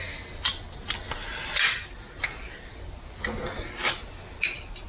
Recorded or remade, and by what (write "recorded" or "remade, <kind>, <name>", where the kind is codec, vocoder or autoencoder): recorded